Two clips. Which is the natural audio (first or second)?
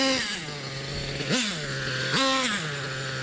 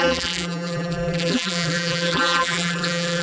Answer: first